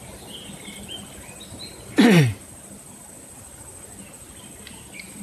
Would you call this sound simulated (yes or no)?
no